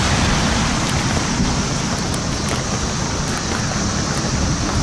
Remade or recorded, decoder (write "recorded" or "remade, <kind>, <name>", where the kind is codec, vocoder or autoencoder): recorded